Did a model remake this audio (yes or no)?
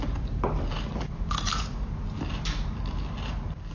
no